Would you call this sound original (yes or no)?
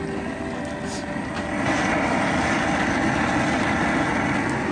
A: yes